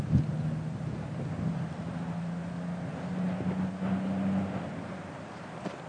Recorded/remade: recorded